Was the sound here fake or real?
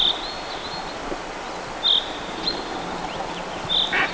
real